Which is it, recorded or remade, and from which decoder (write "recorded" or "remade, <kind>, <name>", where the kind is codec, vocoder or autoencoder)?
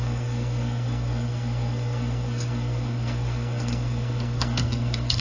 remade, codec, SNAC